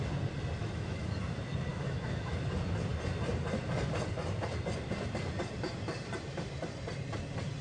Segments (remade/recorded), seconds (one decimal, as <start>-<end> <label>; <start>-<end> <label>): 0.0-0.6 recorded; 0.6-1.2 remade; 1.2-1.7 recorded; 1.7-2.3 remade; 2.3-7.6 recorded